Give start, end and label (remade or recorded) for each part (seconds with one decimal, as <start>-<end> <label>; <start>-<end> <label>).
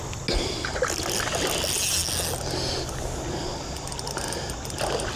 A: 0.0-5.2 recorded